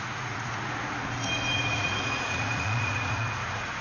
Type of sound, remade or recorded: remade